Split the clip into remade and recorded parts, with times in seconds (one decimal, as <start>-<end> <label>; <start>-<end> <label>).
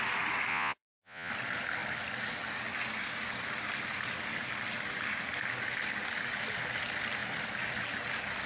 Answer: 0.0-0.5 recorded; 0.5-1.3 remade; 1.3-8.5 recorded